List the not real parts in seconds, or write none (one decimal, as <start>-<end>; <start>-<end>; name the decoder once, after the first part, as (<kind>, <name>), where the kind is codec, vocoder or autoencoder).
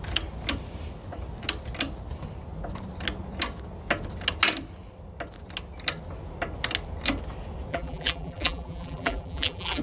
7.7-9.8 (vocoder, BigVGAN v2)